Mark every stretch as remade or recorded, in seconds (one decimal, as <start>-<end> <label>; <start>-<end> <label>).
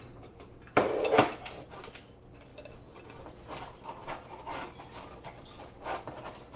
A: 0.0-6.6 recorded